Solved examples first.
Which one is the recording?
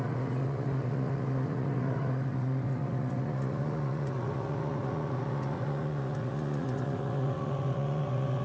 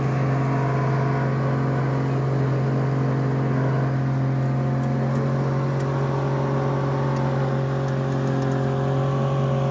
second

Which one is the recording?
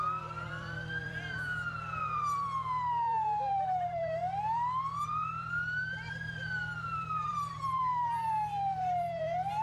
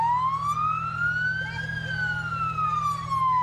second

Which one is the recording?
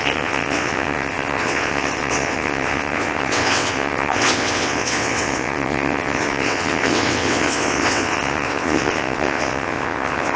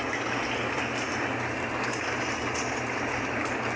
second